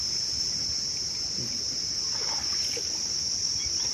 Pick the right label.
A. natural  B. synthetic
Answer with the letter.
A